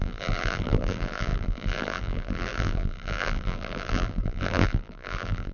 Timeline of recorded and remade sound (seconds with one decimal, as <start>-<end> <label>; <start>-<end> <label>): 0.0-5.5 remade

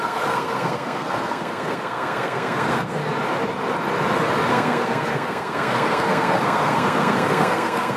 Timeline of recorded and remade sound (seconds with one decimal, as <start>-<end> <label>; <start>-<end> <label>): 0.0-3.0 remade; 3.0-4.5 recorded; 4.5-8.0 remade

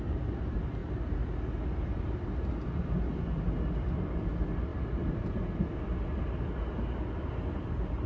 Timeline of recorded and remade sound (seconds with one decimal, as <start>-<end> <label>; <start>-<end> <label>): 0.0-4.7 recorded; 4.7-5.4 remade; 5.4-8.1 recorded